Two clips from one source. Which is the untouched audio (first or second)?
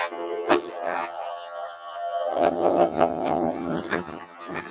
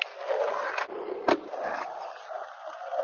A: second